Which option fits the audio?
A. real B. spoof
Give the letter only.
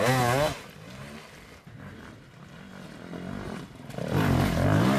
A